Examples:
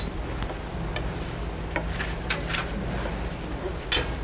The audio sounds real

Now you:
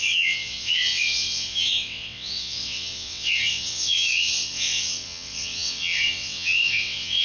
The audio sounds fake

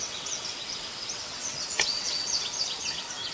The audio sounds fake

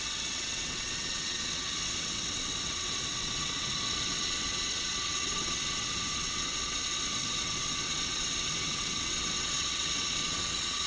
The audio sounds fake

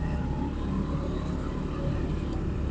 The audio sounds real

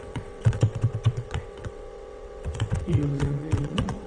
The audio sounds fake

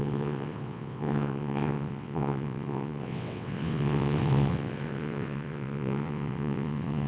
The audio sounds fake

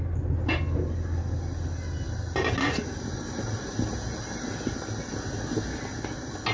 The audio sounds real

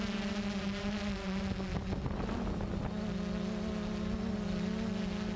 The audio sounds real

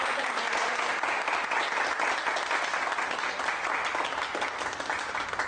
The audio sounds real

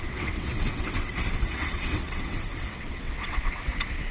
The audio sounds fake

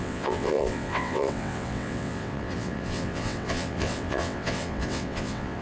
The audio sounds fake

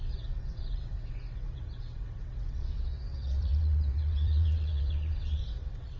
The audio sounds fake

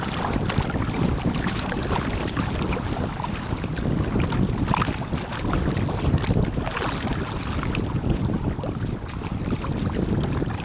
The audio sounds real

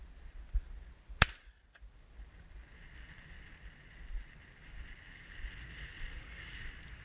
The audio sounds real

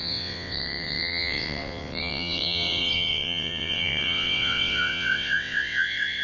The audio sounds fake